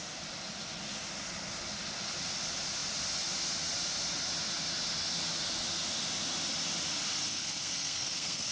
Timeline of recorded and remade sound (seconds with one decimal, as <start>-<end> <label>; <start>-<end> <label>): 0.0-7.3 recorded; 7.3-8.5 remade